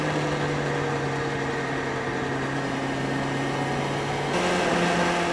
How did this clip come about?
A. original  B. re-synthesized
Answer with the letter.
A